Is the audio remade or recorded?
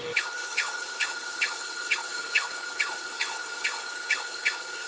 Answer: remade